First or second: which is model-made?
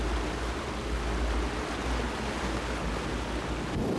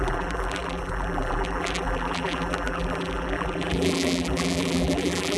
second